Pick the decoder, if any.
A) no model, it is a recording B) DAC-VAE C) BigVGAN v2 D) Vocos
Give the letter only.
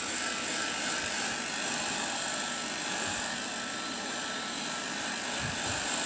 C